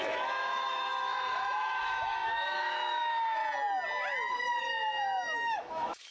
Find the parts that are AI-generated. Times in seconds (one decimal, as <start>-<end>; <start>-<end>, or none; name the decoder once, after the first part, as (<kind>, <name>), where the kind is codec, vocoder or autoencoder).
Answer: 0.0-3.4 (autoencoder, DAC-VAE); 4.6-6.1